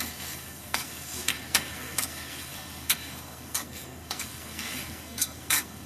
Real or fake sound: fake